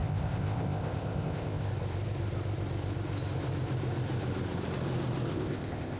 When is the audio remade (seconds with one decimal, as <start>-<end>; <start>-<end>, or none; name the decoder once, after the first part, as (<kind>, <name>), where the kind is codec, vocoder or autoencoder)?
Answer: 0.0-1.7 (codec, ZipCodec); 5.3-6.0